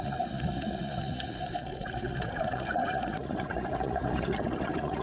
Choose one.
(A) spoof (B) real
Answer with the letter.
A